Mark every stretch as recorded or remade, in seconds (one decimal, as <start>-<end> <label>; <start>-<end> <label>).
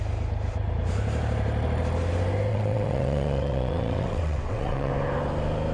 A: 0.0-2.5 recorded; 2.5-4.9 remade; 4.9-5.7 recorded